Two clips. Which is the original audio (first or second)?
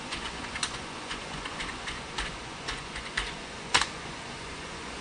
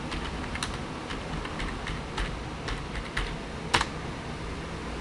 second